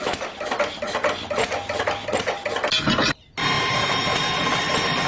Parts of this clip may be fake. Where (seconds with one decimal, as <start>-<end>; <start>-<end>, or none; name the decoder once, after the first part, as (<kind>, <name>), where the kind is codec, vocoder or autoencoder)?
none

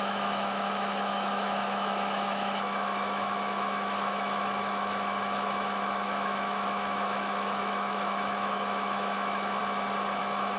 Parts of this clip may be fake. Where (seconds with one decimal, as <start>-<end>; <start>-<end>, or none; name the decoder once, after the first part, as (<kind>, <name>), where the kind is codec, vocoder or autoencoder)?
0.0-9.6 (autoencoder, DAC-VAE); 10.2-10.6